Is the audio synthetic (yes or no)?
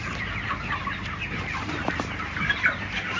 no